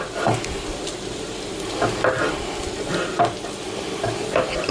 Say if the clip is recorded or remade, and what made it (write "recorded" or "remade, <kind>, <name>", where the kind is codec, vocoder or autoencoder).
recorded